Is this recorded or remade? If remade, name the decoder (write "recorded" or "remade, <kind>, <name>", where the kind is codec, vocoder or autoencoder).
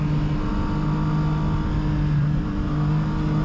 recorded